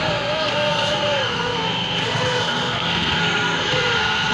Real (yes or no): no